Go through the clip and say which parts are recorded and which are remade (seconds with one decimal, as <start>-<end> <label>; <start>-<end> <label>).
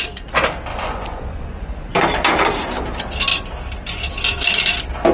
0.0-0.7 recorded; 0.7-1.7 remade; 1.7-5.1 recorded